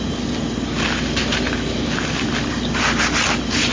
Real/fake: real